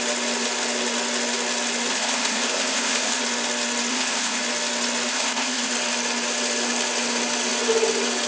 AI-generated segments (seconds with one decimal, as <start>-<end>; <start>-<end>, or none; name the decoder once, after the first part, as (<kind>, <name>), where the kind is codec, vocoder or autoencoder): 1.9-3.2 (codec, ZipCodec); 3.9-4.4; 5.1-5.7